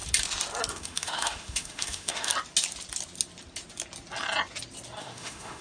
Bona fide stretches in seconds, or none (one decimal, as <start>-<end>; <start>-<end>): 0.0-0.7; 2.3-5.0